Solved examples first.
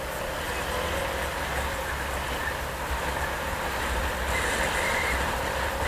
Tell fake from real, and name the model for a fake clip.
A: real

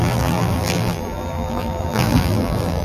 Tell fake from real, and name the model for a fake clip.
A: fake, vocoder, BigVGAN v2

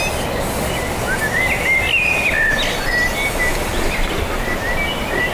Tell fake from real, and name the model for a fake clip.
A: real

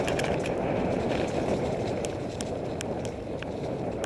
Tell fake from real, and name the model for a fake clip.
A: fake, vocoder, BigVGAN v2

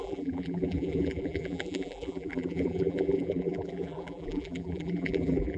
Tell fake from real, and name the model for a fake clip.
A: fake, vocoder, BigVGAN v2